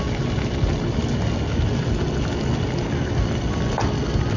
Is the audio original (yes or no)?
yes